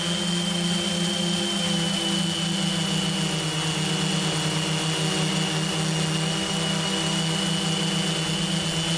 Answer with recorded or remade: recorded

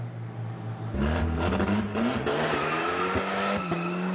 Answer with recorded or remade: recorded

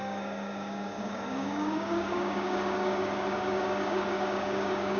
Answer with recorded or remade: remade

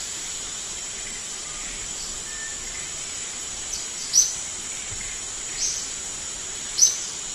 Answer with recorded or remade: remade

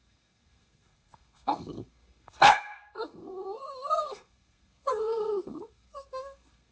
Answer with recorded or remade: remade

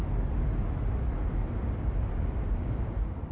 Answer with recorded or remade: recorded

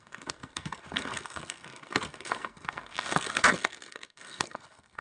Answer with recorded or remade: remade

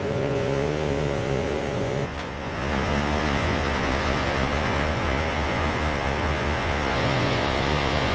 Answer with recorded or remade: remade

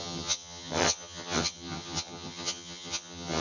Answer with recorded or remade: remade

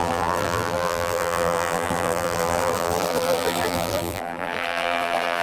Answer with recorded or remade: remade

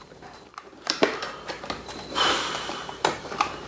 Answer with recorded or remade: remade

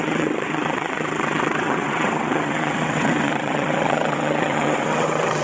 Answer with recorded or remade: remade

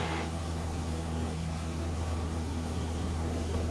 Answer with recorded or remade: remade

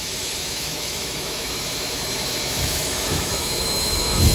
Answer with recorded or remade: remade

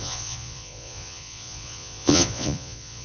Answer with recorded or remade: remade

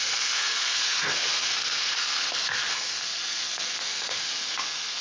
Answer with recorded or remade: remade